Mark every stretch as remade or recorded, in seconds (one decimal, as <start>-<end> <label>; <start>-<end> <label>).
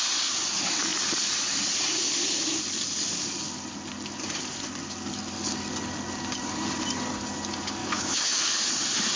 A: 0.0-7.8 recorded; 7.8-8.4 remade; 8.4-9.2 recorded